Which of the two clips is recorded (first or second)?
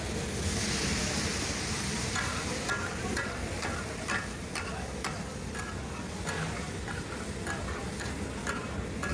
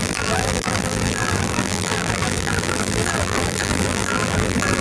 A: first